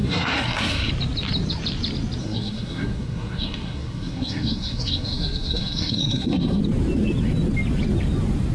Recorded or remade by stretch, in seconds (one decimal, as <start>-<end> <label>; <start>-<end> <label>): 0.0-0.9 remade; 0.9-2.2 recorded; 2.2-6.6 remade; 6.6-8.5 recorded